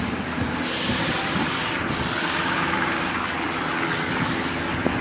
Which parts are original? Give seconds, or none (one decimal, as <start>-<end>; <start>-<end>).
0.0-2.2; 3.1-5.0